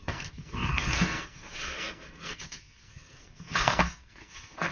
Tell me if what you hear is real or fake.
fake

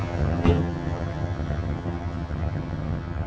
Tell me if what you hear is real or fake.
fake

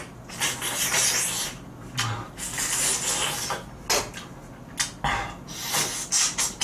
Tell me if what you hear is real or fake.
real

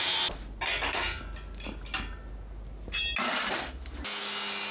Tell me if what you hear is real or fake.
real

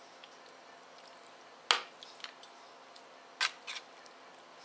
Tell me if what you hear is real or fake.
real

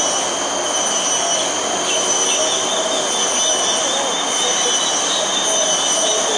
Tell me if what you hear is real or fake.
real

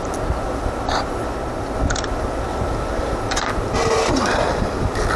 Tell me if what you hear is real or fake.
fake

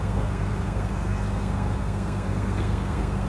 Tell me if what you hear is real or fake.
fake